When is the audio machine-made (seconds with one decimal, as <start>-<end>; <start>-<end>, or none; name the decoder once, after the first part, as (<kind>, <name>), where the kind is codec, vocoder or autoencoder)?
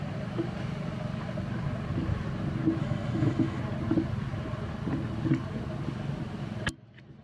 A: 2.8-3.6 (autoencoder, DAC-VAE)